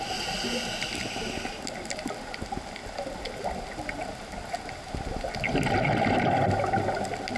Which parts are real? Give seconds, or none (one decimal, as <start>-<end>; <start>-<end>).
0.0-2.8; 4.1-7.4